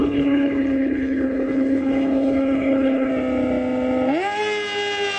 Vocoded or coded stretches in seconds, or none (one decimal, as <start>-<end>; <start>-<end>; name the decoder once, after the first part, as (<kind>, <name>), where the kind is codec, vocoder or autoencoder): 0.0-3.1 (codec, HILCodec)